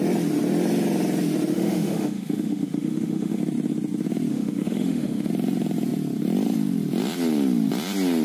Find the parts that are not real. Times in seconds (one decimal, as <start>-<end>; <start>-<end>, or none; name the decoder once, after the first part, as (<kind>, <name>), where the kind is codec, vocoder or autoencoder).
1.5-3.4 (autoencoder, DAC-VAE); 4.3-5.3